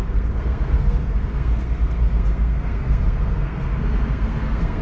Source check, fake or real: fake